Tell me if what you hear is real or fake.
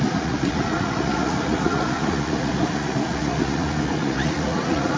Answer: fake